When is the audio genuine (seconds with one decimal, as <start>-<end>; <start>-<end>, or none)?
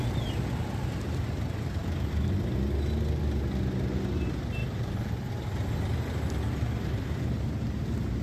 0.0-4.6; 5.3-8.2